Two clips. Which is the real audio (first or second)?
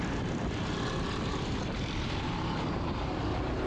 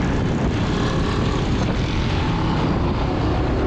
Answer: second